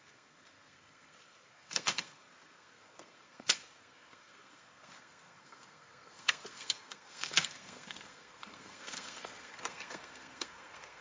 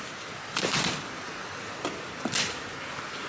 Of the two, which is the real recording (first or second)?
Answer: second